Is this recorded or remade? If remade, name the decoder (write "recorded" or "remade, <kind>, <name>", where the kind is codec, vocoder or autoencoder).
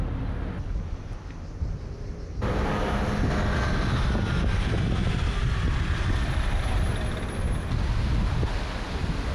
recorded